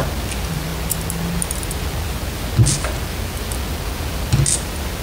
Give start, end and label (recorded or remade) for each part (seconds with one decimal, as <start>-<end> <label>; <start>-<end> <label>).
0.0-5.0 recorded